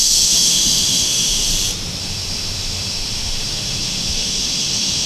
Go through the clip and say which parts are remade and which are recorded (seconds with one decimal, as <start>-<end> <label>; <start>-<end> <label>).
0.0-1.5 remade; 1.5-2.0 recorded; 2.0-5.1 remade